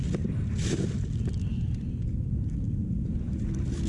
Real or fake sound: fake